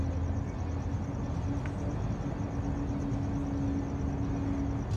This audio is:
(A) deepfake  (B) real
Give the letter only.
B